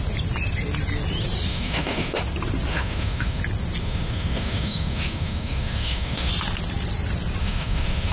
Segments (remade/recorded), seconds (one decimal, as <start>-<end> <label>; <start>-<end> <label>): 0.0-1.5 recorded; 1.5-2.2 remade; 2.2-2.7 recorded; 2.7-3.4 remade; 3.4-3.8 recorded; 3.8-6.3 remade; 6.3-7.4 recorded; 7.4-8.1 remade